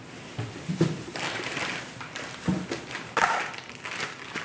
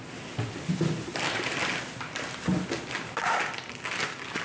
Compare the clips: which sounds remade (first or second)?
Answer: first